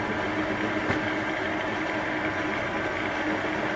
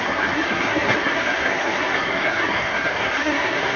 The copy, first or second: second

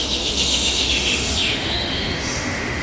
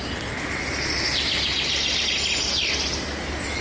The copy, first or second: first